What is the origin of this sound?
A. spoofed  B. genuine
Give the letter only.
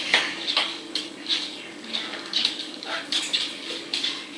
A